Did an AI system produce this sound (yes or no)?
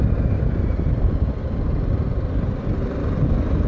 no